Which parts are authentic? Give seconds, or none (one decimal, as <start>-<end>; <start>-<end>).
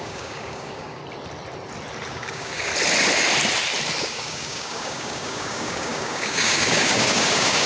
1.0-2.1; 2.7-4.0